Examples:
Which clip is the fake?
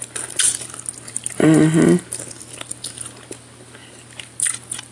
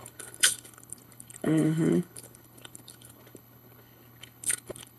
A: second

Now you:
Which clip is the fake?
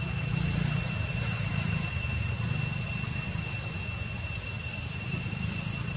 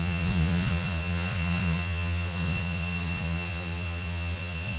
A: second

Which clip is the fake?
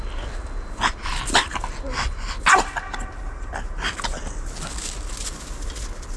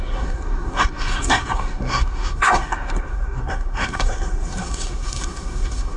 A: second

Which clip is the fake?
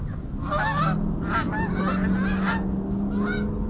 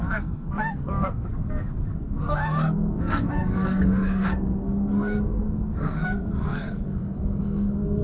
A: second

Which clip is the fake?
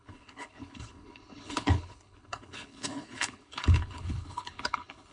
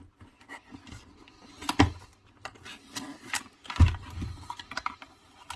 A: first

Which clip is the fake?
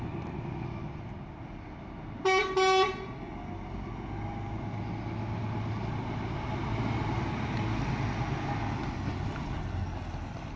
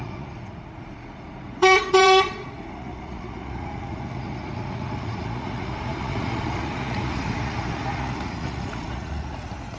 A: second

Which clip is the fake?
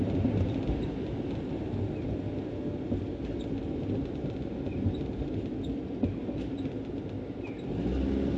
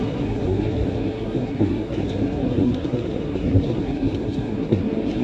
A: second